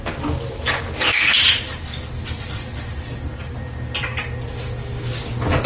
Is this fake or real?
real